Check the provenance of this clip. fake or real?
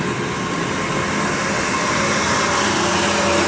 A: real